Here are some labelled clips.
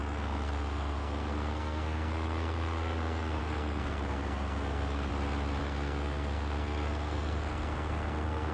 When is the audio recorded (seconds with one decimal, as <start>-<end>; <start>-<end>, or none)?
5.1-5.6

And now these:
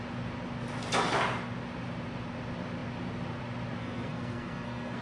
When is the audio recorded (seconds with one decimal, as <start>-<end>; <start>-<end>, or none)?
0.0-3.8

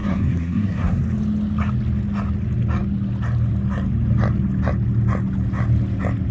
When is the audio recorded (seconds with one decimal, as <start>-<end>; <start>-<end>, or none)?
1.0-6.3

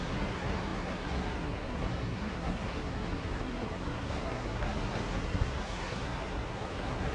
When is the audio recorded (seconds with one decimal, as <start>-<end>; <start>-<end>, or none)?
none

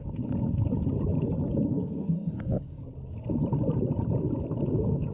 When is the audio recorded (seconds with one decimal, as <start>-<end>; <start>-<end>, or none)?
0.0-1.7; 2.3-5.1

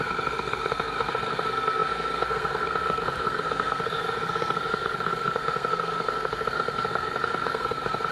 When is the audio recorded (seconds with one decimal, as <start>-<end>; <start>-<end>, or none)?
none